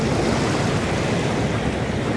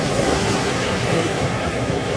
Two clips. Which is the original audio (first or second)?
first